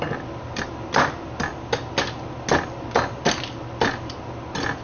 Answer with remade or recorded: recorded